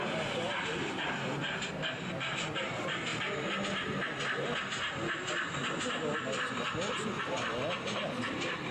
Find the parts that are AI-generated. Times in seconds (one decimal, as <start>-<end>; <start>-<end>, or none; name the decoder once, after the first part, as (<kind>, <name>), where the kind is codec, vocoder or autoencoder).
none